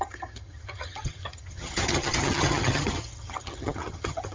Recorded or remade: remade